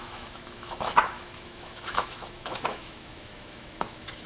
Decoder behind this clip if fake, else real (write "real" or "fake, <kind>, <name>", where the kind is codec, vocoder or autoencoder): fake, autoencoder, DAC-VAE